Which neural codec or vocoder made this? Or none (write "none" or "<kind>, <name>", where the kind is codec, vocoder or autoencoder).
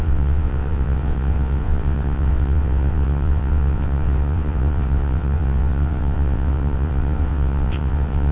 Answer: vocoder, WaveNeXt